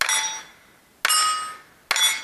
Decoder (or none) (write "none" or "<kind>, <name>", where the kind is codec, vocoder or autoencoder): none